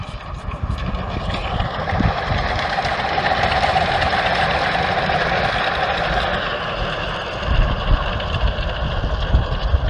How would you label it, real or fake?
real